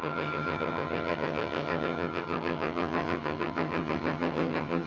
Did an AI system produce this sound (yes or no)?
yes